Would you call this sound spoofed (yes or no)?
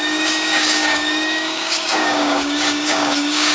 yes